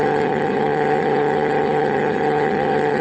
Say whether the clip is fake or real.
fake